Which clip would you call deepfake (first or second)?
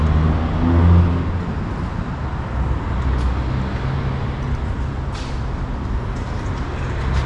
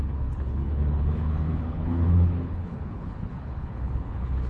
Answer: second